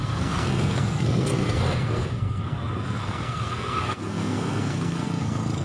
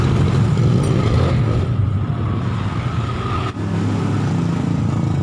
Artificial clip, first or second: first